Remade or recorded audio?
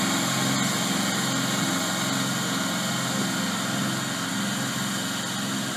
recorded